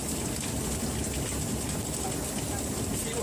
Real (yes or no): yes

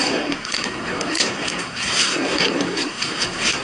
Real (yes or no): no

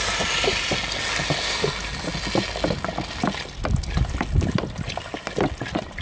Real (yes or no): yes